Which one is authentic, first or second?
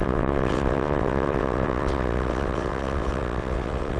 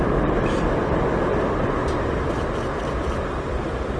second